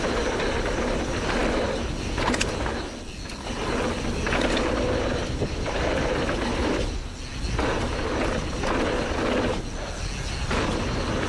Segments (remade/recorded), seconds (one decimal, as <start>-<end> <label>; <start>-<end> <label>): 0.0-11.3 recorded